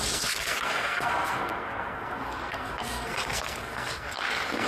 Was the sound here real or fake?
fake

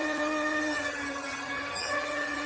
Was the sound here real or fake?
fake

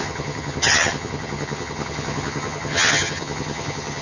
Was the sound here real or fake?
fake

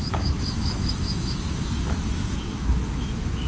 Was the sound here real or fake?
fake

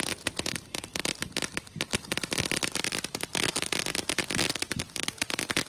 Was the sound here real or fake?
real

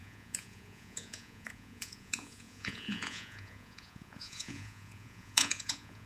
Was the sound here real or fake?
fake